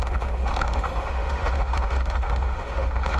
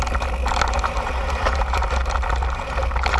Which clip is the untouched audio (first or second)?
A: second